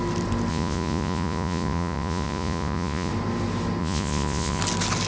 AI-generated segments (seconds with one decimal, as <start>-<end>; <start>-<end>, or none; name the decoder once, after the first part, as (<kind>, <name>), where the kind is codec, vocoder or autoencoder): 0.5-3.1 (vocoder, Vocos); 3.8-4.6